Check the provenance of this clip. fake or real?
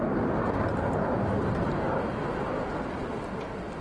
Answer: real